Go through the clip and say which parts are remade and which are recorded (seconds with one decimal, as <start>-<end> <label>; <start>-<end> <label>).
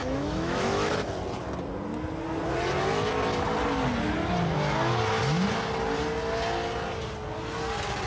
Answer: 0.0-1.1 remade; 1.1-8.1 recorded